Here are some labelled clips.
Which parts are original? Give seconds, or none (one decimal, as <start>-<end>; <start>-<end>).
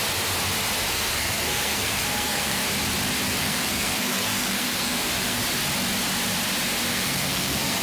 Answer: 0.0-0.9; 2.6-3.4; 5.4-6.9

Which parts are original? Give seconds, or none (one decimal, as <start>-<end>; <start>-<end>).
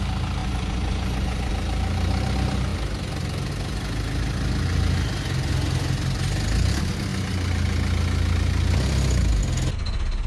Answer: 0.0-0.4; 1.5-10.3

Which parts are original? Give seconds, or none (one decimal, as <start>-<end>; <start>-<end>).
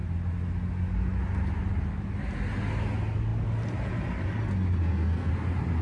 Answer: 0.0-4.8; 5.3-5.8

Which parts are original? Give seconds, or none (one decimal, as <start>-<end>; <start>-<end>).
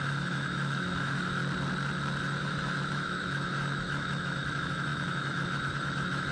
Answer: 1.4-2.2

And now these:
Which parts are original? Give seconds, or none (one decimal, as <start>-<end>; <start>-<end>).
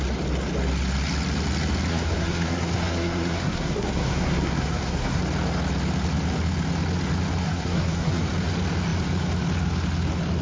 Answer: 0.0-1.9; 5.2-7.4; 8.2-10.4